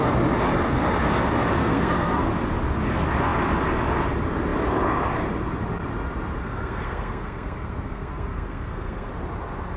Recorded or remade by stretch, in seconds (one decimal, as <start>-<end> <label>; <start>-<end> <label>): 0.0-1.6 recorded; 1.6-2.3 remade; 2.3-6.4 recorded; 6.4-9.1 remade; 9.1-9.8 recorded